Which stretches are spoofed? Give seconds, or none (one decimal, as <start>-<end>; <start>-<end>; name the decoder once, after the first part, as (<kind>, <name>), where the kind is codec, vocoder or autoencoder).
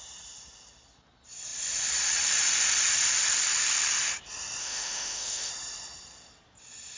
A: 4.6-5.5 (autoencoder, DAC-VAE)